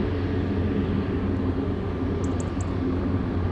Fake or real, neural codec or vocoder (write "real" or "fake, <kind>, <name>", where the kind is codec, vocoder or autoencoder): real